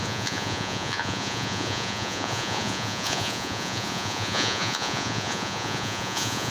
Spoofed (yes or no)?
yes